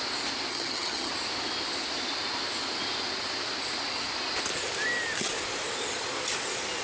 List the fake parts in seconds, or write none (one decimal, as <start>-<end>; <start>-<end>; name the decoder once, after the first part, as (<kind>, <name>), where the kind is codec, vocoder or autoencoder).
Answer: 0.5-1.1 (vocoder, HiFi-GAN)